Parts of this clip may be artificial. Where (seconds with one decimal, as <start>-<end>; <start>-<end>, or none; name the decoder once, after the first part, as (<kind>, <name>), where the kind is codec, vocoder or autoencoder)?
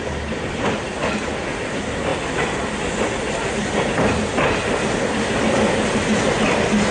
none